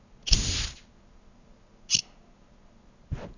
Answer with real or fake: real